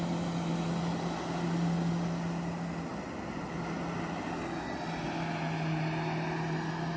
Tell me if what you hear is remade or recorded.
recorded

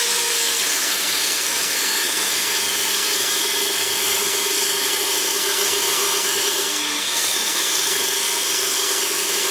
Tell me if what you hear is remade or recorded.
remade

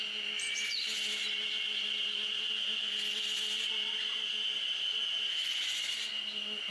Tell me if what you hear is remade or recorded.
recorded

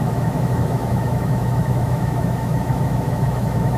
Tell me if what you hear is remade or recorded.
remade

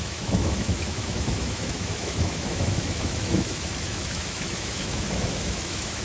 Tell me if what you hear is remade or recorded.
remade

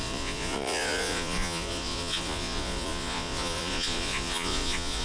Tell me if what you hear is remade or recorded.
remade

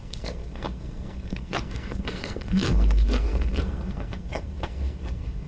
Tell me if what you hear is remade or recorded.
remade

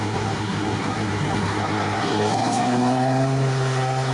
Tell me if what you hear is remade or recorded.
remade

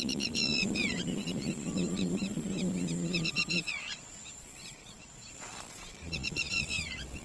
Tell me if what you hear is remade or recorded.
remade